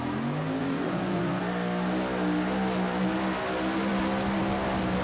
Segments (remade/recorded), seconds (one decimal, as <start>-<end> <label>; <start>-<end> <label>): 0.0-0.6 recorded; 0.6-1.4 remade; 1.4-5.0 recorded